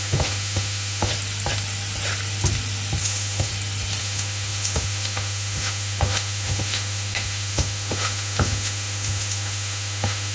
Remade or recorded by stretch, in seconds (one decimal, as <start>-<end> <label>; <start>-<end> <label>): 0.0-1.1 remade; 1.1-3.0 recorded; 3.0-3.5 remade; 3.5-4.0 recorded; 4.0-10.3 remade